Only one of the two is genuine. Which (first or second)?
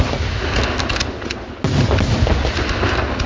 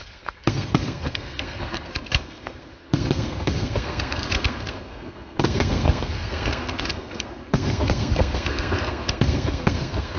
first